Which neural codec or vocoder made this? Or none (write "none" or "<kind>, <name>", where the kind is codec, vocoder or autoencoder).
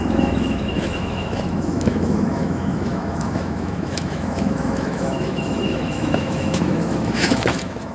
autoencoder, DAC-VAE